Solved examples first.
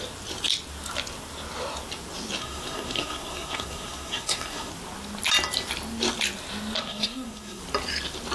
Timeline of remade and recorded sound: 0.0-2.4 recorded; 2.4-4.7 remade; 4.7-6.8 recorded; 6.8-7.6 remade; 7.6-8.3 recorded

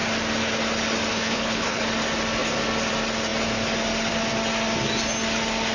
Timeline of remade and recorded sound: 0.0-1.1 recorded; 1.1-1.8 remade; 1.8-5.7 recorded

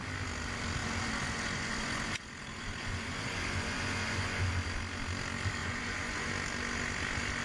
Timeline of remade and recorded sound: 0.0-0.8 recorded; 0.8-4.5 remade; 4.5-5.6 recorded; 5.6-6.3 remade; 6.3-7.4 recorded

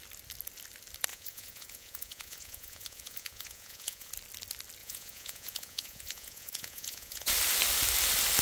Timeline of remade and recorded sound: 0.0-1.1 recorded; 1.1-4.1 remade; 4.1-4.8 recorded; 4.8-7.3 remade; 7.3-8.4 recorded

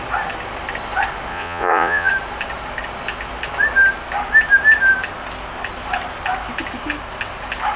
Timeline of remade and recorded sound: 0.0-1.3 recorded; 1.3-2.1 remade; 2.1-7.8 recorded